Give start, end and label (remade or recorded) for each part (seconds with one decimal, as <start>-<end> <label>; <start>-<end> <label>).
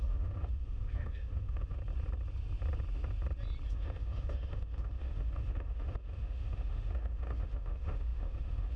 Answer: 0.0-1.8 remade; 1.8-3.7 recorded; 3.7-8.8 remade